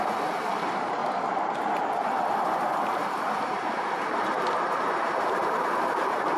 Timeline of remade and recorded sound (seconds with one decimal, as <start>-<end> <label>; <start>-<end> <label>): 0.0-1.0 remade; 1.0-2.3 recorded; 2.3-2.7 remade; 2.7-4.2 recorded; 4.2-6.4 remade